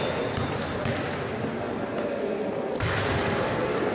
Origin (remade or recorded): recorded